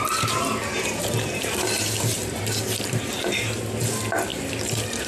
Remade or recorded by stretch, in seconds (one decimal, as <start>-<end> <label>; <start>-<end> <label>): 0.0-0.6 recorded; 0.6-3.6 remade; 3.6-4.3 recorded; 4.3-5.1 remade